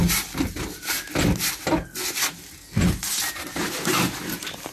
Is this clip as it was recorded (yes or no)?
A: yes